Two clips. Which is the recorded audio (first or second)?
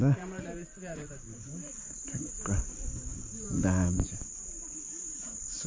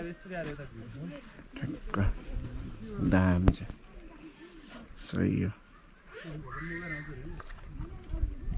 second